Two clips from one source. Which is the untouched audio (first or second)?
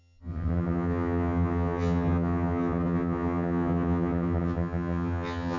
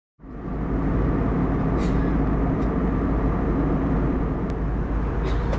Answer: second